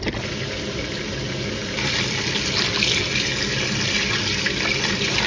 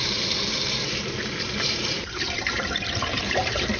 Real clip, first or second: first